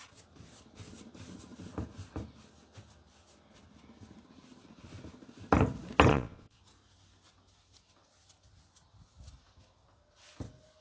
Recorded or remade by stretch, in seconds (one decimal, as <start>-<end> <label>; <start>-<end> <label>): 0.0-6.1 recorded; 6.1-6.6 remade; 6.6-10.8 recorded